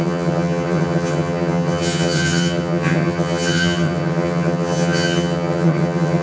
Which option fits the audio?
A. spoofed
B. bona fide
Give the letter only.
A